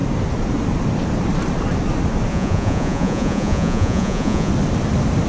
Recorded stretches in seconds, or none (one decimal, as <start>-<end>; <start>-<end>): 0.0-2.3; 4.5-5.3